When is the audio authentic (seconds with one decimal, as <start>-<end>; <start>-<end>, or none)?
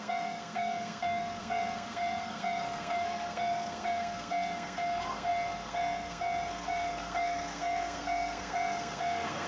none